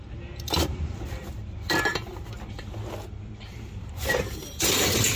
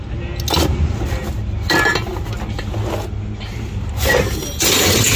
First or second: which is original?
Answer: second